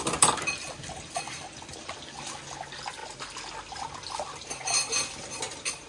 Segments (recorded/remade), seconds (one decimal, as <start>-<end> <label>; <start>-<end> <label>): 0.0-3.0 remade; 3.0-5.4 recorded; 5.4-5.9 remade